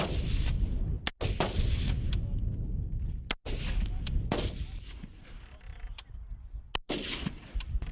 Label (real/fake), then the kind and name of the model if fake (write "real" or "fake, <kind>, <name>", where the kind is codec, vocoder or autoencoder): real